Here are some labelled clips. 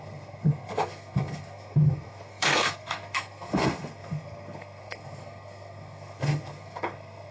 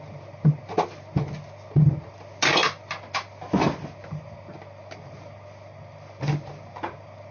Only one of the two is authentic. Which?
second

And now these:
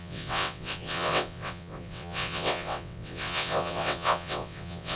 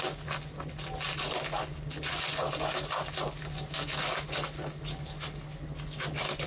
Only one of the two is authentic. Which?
second